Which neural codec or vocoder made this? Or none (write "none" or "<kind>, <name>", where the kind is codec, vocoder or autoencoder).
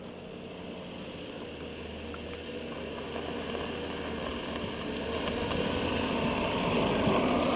none